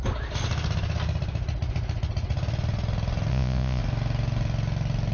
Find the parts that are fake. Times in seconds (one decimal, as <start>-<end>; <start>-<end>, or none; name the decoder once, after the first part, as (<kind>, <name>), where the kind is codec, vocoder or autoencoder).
3.3-3.8 (vocoder, Vocos)